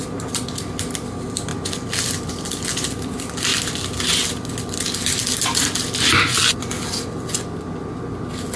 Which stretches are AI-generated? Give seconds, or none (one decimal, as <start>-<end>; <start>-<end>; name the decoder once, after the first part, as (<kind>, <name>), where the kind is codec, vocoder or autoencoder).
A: 0.0-1.5 (vocoder, BigVGAN v2); 2.3-3.5